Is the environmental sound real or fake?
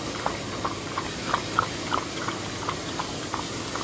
fake